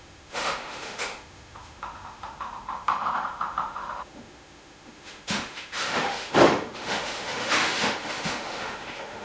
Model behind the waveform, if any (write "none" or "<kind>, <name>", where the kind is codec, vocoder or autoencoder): autoencoder, DAC-VAE